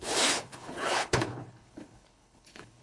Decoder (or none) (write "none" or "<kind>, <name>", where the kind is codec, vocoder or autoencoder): codec, HILCodec